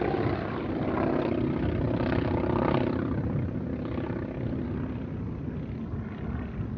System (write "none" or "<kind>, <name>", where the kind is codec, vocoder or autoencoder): none